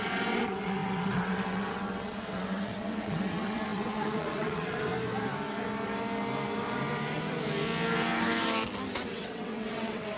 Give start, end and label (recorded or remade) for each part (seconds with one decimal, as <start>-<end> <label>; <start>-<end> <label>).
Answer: 0.0-4.9 remade; 4.9-9.0 recorded; 9.0-10.2 remade

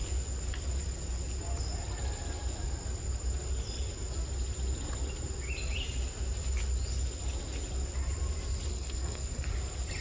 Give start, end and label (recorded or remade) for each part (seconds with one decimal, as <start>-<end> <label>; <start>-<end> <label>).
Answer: 0.0-8.7 recorded; 8.7-9.5 remade; 9.5-10.0 recorded

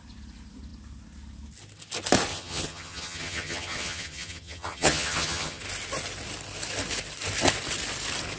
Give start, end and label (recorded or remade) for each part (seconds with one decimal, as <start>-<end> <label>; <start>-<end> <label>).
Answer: 0.0-2.3 recorded; 2.3-5.6 remade; 5.6-8.4 recorded

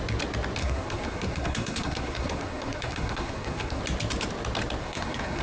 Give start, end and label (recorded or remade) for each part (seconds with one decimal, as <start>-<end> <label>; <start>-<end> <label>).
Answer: 0.0-0.6 recorded; 0.6-3.8 remade; 3.8-4.8 recorded; 4.8-5.4 remade

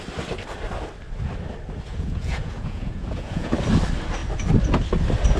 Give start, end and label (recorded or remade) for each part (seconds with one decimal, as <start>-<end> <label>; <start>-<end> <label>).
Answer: 0.0-1.9 recorded; 1.9-3.5 remade; 3.5-5.4 recorded

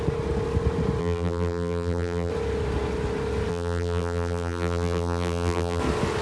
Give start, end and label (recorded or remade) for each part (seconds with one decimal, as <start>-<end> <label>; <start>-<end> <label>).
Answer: 0.0-1.0 recorded; 1.0-2.3 remade; 2.3-3.5 recorded; 3.5-5.8 remade; 5.8-6.2 recorded

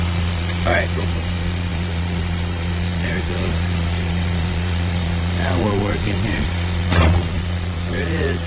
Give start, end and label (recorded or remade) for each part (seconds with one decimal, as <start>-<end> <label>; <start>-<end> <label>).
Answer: 0.0-8.5 remade

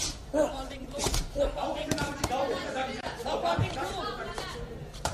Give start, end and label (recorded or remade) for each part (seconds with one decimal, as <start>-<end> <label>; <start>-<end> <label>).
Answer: 0.0-5.1 remade